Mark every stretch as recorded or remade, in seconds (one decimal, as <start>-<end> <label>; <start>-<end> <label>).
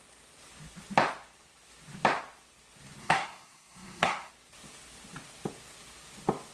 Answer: 0.0-3.0 recorded; 3.0-4.3 remade; 4.3-6.5 recorded